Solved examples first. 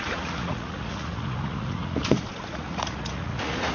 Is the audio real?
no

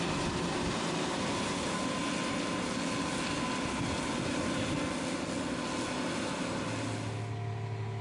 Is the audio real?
yes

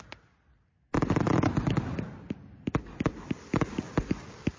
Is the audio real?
yes